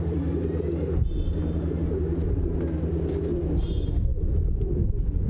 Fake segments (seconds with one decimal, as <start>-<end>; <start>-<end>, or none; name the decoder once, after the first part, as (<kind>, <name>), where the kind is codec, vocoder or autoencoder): none